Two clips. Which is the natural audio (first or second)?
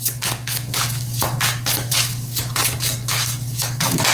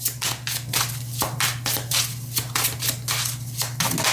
second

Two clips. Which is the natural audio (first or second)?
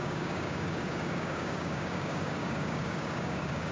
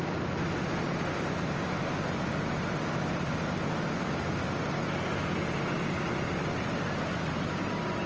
second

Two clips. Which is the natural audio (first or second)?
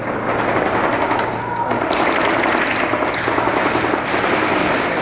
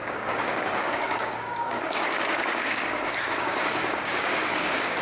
first